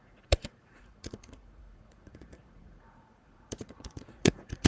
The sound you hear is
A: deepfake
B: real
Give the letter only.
A